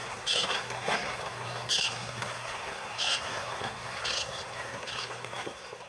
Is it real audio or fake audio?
fake